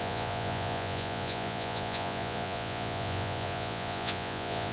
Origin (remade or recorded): remade